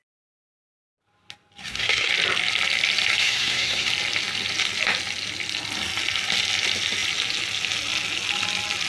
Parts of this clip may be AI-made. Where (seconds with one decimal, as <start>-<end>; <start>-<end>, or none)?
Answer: 1.6-2.1; 3.2-3.9